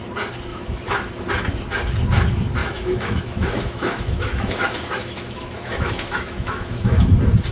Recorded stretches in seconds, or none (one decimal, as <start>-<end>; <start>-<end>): 0.0-0.5; 1.1-2.6; 7.1-7.5